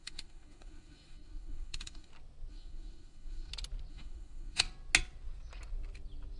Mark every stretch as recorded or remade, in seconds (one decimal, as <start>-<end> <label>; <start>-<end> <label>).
0.0-2.1 remade; 2.1-2.5 recorded; 2.5-3.5 remade; 3.5-3.9 recorded; 3.9-4.6 remade; 4.6-6.4 recorded